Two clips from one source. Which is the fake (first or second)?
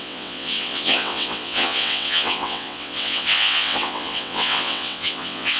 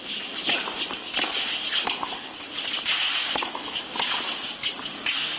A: first